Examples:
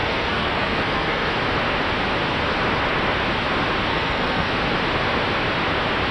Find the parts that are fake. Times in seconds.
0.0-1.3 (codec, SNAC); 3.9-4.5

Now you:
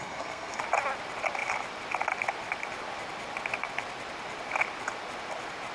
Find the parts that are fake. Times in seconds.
0.0-0.6 (codec, SNAC)